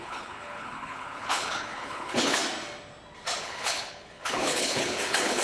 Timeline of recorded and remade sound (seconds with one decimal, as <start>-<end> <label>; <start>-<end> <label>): 0.0-2.4 remade; 2.4-3.4 recorded; 3.4-5.4 remade